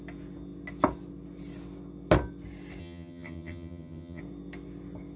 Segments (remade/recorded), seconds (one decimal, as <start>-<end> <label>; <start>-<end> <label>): 0.0-2.8 recorded; 2.8-4.2 remade; 4.2-5.2 recorded